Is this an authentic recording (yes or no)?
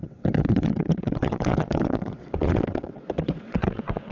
no